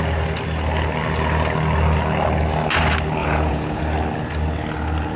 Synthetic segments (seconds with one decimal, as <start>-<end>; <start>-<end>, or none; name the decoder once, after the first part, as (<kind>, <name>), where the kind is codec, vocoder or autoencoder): 3.2-3.8 (vocoder, Vocos)